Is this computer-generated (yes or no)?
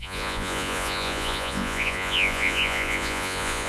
yes